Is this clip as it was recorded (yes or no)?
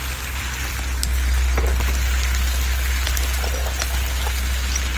yes